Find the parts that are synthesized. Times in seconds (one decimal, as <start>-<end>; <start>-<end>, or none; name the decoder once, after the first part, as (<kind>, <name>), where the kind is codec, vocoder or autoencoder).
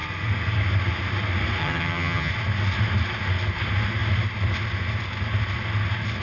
1.6-2.3 (vocoder, HiFi-GAN)